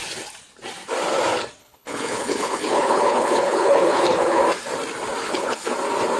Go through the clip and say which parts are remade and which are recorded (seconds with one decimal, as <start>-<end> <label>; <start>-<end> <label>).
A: 0.0-1.6 recorded; 1.6-4.4 remade; 4.4-5.2 recorded; 5.2-5.7 remade; 5.7-6.2 recorded